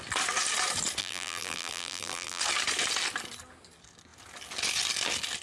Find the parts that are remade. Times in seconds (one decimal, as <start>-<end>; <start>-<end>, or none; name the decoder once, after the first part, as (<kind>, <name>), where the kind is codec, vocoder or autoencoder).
1.0-2.4 (vocoder, BigVGAN v2)